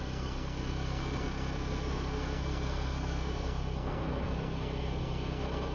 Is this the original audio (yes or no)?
no